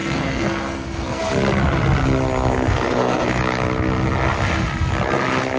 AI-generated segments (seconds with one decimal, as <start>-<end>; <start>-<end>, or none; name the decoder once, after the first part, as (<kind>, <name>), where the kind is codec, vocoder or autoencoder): 0.0-1.2 (codec, SNAC); 2.5-3.4